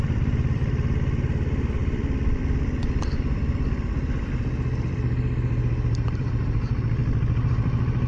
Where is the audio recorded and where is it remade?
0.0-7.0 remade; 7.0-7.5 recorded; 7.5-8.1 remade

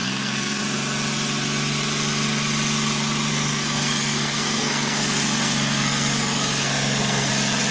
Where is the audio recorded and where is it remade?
0.0-0.6 remade; 0.6-3.3 recorded; 3.3-7.3 remade; 7.3-7.7 recorded